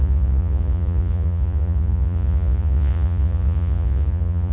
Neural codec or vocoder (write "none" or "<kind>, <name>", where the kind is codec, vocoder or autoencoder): vocoder, Vocos